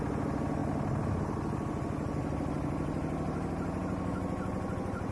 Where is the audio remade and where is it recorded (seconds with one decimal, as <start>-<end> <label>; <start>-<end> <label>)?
0.0-5.1 recorded